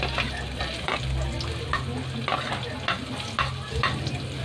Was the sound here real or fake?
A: real